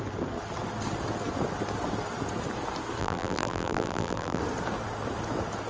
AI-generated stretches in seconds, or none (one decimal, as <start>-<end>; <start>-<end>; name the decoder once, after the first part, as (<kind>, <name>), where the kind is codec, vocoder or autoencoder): 3.0-4.4 (vocoder, BigVGAN v2)